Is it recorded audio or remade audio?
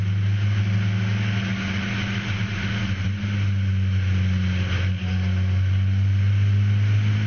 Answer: recorded